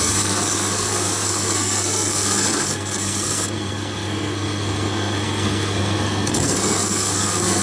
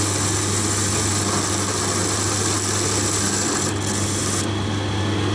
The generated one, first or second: first